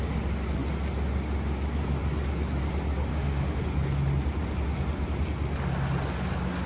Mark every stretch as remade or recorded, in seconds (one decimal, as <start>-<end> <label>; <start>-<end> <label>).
0.0-3.1 recorded; 3.1-3.6 remade; 3.6-6.7 recorded